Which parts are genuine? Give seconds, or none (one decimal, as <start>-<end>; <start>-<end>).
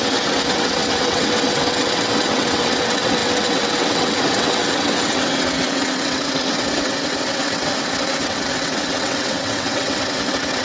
none